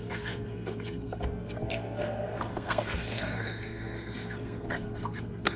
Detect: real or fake fake